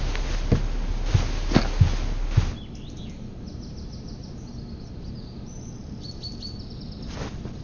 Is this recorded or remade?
recorded